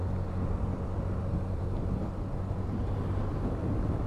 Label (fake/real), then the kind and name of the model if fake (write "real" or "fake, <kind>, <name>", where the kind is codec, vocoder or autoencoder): fake, vocoder, BigVGAN v2